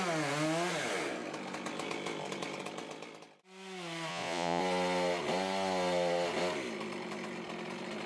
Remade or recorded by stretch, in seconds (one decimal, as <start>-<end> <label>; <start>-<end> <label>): 0.0-4.1 recorded; 4.1-4.6 remade; 4.6-8.1 recorded

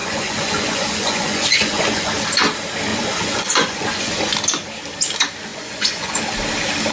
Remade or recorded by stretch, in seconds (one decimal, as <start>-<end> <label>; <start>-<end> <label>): 0.0-2.1 remade; 2.1-2.9 recorded; 2.9-4.1 remade; 4.1-5.5 recorded; 5.5-6.2 remade; 6.2-6.9 recorded

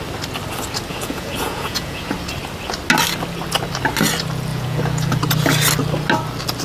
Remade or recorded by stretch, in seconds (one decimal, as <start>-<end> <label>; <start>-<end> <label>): 0.0-0.9 recorded; 0.9-2.1 remade; 2.1-4.5 recorded; 4.5-5.2 remade; 5.2-6.6 recorded

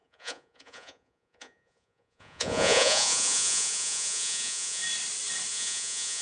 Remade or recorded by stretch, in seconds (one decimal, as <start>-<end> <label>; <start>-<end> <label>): 0.0-4.8 remade; 4.8-5.5 recorded; 5.5-6.2 remade

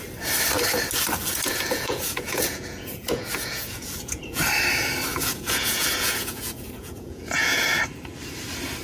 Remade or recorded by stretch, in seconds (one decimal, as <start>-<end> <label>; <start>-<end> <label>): 0.0-1.2 recorded; 1.2-4.4 remade; 4.4-5.1 recorded; 5.1-7.6 remade; 7.6-8.8 recorded

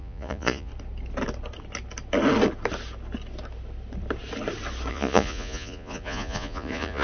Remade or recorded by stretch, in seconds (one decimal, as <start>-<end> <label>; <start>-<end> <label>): 0.0-0.7 remade; 0.7-4.9 recorded; 4.9-7.0 remade

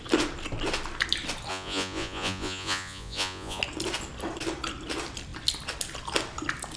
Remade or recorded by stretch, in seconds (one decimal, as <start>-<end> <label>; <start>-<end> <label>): 0.0-1.5 recorded; 1.5-3.6 remade; 3.6-6.8 recorded

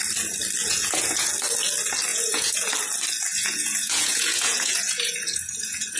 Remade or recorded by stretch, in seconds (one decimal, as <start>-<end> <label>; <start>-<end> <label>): 0.0-0.6 recorded; 0.6-1.3 remade; 1.3-2.1 recorded; 2.1-2.7 remade; 2.7-3.3 recorded; 3.3-6.0 remade